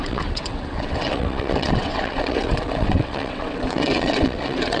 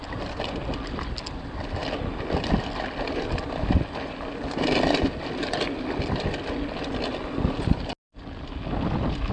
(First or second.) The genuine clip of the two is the second